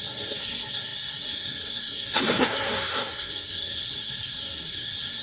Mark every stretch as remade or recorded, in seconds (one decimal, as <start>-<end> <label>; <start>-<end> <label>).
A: 0.0-5.2 remade